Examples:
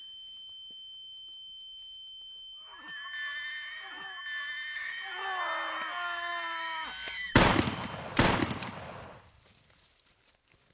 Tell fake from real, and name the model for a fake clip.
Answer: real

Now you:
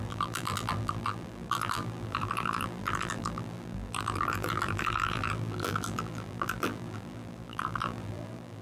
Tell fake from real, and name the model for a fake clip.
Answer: fake, vocoder, BigVGAN v2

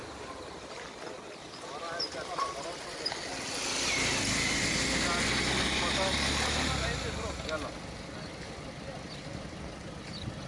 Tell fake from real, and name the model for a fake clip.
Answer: real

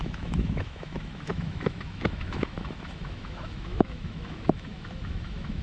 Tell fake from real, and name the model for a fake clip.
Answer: fake, autoencoder, DAC-VAE